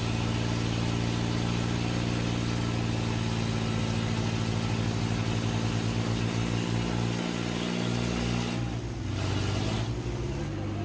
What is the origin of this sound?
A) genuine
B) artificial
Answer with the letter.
A